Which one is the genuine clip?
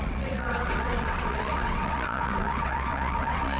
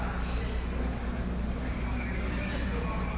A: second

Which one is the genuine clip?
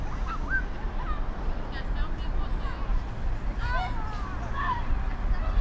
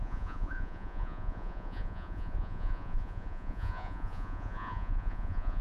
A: first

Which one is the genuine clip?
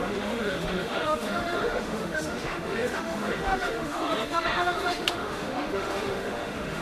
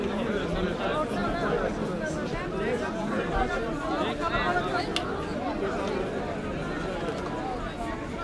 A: second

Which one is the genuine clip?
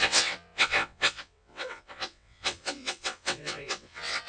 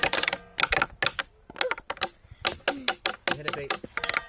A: second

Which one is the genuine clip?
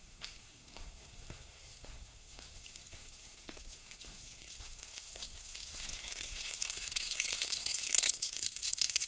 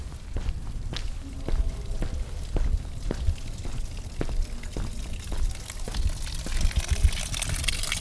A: second